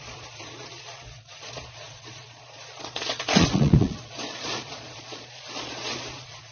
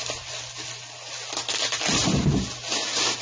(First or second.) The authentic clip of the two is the second